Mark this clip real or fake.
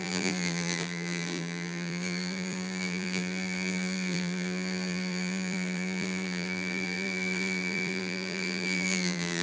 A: fake